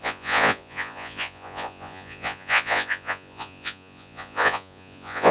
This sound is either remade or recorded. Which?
remade